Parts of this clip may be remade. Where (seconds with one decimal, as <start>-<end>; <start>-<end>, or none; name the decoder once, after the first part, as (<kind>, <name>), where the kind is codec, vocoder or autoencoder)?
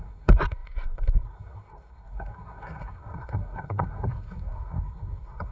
0.0-5.5 (codec, SNAC)